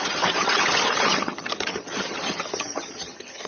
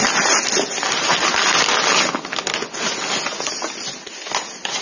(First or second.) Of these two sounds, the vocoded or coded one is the first